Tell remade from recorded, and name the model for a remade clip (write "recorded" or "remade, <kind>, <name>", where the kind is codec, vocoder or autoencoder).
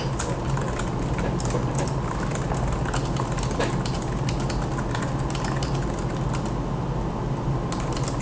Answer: recorded